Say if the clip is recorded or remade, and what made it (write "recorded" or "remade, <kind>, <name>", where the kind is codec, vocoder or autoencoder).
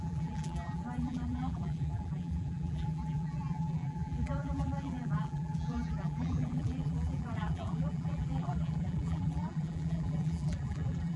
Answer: remade, vocoder, BigVGAN v2